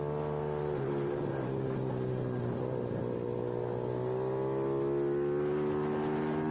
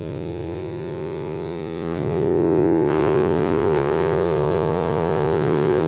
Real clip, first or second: first